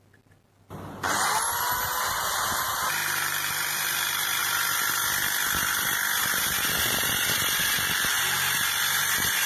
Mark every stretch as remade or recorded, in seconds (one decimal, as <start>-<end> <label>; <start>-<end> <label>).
0.0-4.4 recorded; 4.4-7.1 remade; 7.1-9.5 recorded